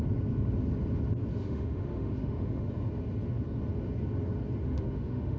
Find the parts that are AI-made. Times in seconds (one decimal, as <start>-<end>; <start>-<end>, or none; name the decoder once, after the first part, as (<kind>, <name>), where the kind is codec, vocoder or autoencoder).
1.3-2.7 (autoencoder, DAC-VAE); 4.6-5.4